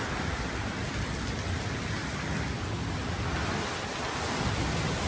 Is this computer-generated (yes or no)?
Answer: no